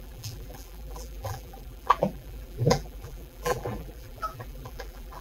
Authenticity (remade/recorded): remade